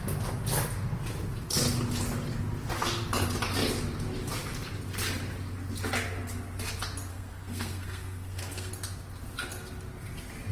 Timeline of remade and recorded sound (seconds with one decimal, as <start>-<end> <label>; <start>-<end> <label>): 0.0-7.1 recorded; 7.1-8.7 remade; 8.7-10.5 recorded